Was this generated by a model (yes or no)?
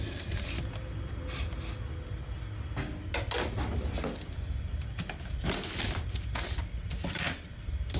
no